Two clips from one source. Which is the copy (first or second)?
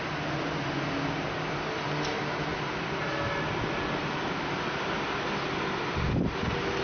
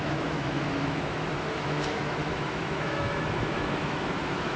second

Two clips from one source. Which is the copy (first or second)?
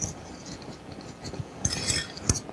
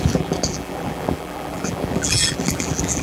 second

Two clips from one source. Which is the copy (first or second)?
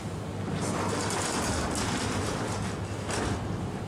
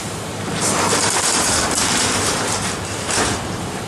second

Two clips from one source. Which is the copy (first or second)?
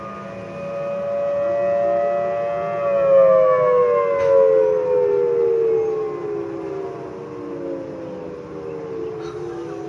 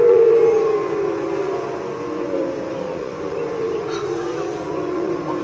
second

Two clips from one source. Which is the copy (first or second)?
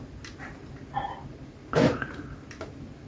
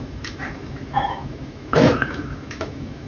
second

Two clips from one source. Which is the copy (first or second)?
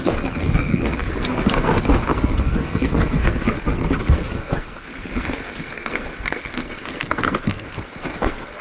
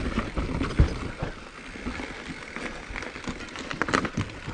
first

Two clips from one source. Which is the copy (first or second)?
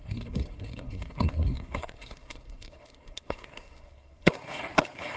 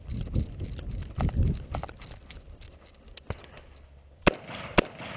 first